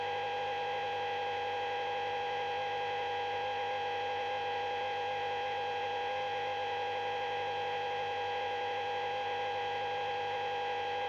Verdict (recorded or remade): recorded